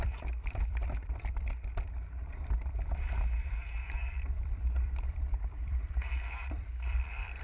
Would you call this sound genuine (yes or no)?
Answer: no